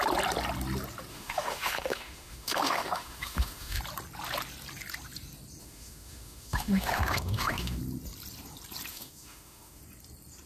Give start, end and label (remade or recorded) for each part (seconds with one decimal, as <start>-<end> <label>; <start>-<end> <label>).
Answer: 0.0-1.1 recorded; 1.1-3.8 remade; 3.8-5.6 recorded; 5.6-7.8 remade; 7.8-8.9 recorded; 8.9-9.8 remade; 9.8-10.5 recorded